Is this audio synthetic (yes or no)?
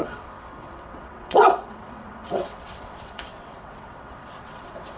yes